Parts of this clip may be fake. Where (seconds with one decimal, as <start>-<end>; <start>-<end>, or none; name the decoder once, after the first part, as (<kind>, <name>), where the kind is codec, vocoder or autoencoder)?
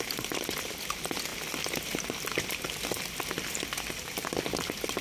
none